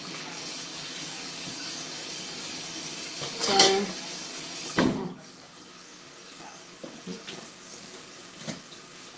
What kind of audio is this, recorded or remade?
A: remade